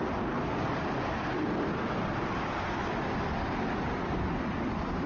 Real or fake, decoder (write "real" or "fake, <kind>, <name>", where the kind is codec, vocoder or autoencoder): real